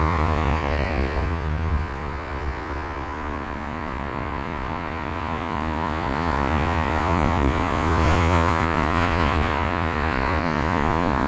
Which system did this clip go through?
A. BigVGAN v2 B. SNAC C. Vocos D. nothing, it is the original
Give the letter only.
C